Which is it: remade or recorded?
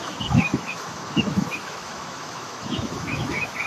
remade